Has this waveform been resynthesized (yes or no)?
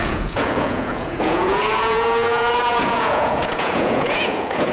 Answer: yes